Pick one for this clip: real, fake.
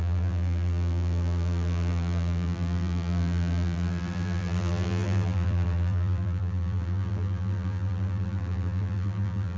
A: fake